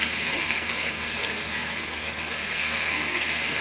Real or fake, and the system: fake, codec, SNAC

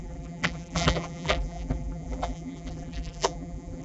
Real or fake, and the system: fake, vocoder, BigVGAN v2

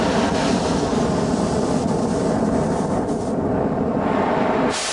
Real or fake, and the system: real